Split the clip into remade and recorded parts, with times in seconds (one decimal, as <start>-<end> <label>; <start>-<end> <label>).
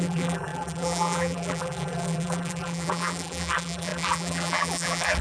0.0-5.2 remade